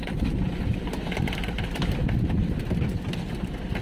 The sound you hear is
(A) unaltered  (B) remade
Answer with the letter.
A